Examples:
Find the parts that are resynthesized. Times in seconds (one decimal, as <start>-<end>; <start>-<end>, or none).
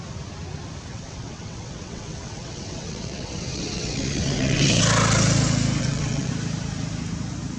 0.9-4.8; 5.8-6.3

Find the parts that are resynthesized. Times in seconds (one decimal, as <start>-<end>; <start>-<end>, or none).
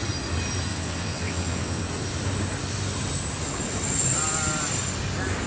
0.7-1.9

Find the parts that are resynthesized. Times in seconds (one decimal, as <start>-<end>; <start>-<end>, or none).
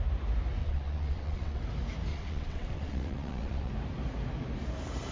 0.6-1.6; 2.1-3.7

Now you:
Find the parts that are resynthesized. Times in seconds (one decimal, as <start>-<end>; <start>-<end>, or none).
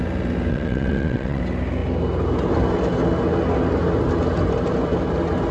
0.5-1.4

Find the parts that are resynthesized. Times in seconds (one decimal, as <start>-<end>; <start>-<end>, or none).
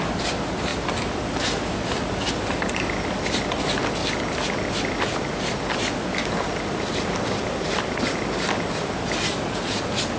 none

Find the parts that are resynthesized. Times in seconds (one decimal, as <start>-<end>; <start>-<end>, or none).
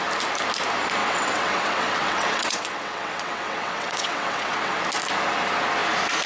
1.0-4.8